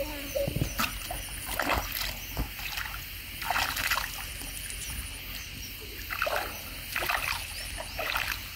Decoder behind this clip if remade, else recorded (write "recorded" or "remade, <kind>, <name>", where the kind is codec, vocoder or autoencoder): recorded